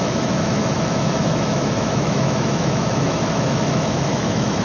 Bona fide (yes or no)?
no